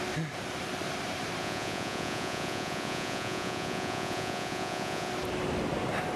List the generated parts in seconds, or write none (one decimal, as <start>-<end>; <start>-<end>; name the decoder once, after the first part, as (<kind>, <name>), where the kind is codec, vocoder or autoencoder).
1.4-5.1 (vocoder, Vocos)